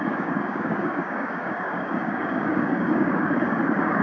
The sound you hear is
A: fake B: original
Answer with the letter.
A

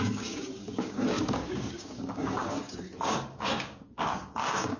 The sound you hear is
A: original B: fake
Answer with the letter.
B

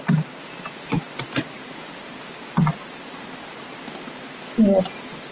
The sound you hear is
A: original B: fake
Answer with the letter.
A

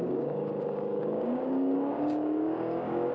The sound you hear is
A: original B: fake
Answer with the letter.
B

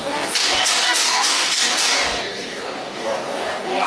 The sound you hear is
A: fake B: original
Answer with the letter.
A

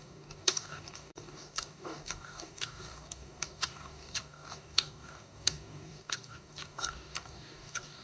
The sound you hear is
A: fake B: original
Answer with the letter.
A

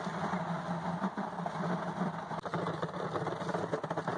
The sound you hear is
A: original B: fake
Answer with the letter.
A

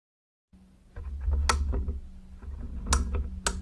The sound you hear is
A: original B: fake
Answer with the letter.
A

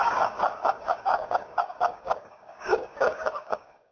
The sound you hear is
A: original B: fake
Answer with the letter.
B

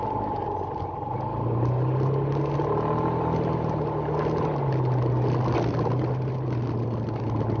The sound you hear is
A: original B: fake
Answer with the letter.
A